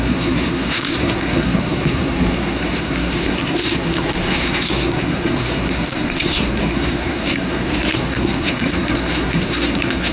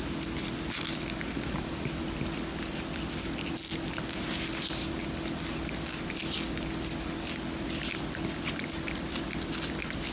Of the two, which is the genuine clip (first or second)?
second